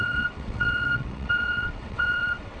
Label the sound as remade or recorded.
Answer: remade